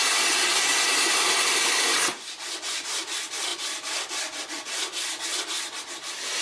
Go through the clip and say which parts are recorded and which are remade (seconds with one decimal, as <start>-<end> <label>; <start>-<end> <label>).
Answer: 0.0-0.9 recorded; 0.9-2.5 remade; 2.5-3.5 recorded; 3.5-5.6 remade; 5.6-6.4 recorded